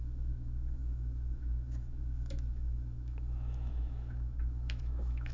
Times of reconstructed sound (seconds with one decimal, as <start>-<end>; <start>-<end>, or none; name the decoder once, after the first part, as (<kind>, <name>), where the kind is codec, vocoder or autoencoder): 0.0-5.3 (autoencoder, DAC-VAE)

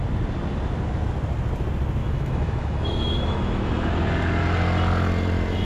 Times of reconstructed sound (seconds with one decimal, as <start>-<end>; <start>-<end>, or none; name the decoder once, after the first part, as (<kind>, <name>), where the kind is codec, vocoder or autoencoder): 2.0-3.9 (autoencoder, DAC-VAE)

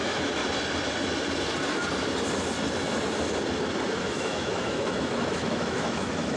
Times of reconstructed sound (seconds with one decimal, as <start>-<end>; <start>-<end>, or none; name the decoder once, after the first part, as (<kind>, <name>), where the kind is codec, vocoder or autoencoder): 0.0-0.4 (autoencoder, DAC-VAE); 4.0-6.4

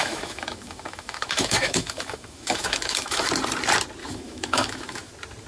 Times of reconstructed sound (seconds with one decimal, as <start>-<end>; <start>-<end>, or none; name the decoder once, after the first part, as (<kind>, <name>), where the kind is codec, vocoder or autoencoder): 0.0-3.3 (autoencoder, DAC-VAE); 4.0-5.1